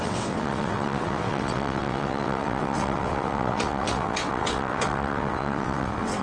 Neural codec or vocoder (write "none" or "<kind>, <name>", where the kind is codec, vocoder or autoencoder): vocoder, WaveNeXt